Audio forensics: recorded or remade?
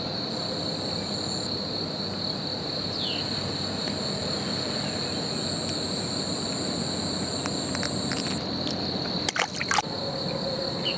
recorded